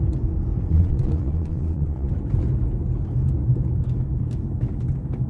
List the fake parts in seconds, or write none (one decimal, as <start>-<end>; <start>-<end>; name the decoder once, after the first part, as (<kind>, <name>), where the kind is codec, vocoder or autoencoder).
0.7-2.1 (vocoder, Vocos)